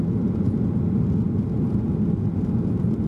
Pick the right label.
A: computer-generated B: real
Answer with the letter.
B